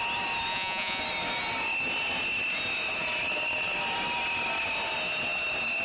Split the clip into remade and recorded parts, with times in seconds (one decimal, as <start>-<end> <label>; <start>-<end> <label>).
0.0-0.5 recorded; 0.5-1.0 remade; 1.0-5.8 recorded